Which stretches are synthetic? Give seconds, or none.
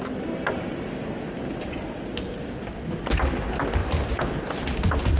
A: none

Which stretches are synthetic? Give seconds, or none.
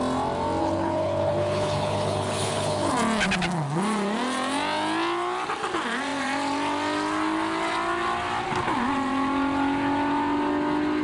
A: 0.6-2.9 (codec, HILCodec)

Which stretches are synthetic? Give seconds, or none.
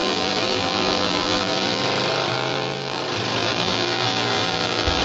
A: 0.0-1.8 (vocoder, BigVGAN v2); 2.3-3.0; 3.4-5.0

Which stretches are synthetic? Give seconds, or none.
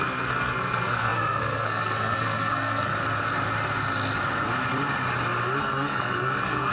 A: 0.0-2.9 (codec, SNAC); 5.6-6.7